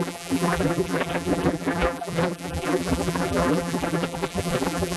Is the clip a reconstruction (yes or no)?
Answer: yes